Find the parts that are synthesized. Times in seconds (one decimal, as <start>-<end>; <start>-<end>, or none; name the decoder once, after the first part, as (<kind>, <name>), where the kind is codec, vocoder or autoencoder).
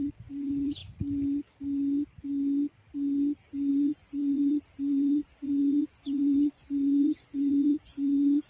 0.0-0.8 (vocoder, Vocos); 3.7-8.5